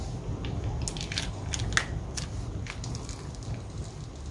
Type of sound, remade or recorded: recorded